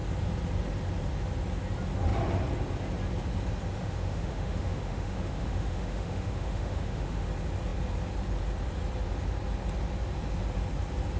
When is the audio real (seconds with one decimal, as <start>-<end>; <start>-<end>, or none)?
0.0-3.8; 7.3-11.2

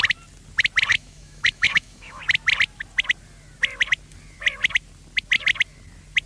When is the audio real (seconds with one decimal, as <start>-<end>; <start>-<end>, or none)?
0.0-0.9; 2.2-6.3